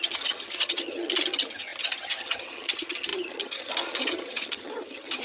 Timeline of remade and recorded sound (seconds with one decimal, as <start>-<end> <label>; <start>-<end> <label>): 0.0-5.2 remade